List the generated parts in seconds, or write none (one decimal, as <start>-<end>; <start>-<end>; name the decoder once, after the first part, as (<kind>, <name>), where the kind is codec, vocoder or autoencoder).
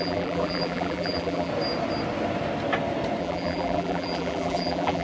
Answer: 0.0-1.5 (vocoder, BigVGAN v2); 3.2-5.0